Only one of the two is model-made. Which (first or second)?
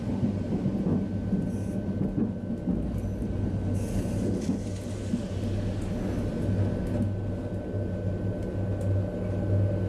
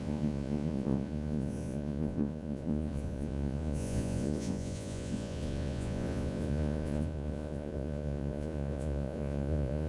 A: second